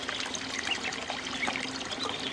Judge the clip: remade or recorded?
recorded